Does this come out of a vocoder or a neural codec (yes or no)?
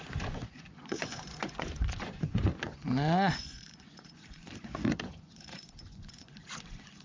yes